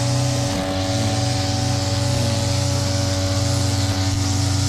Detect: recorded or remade recorded